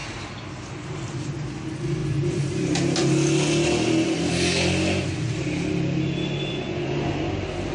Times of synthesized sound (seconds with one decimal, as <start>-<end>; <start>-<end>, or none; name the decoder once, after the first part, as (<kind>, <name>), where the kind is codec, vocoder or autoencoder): 6.5-7.1 (vocoder, Vocos)